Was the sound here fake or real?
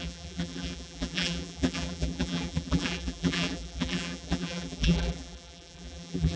fake